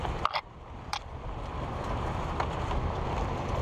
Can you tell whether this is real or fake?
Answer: fake